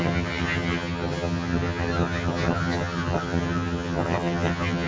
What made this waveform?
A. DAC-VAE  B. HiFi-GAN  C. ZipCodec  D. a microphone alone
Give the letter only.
B